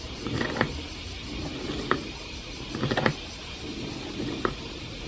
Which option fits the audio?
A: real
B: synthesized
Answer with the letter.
A